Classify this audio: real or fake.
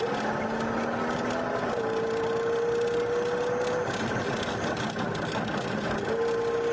real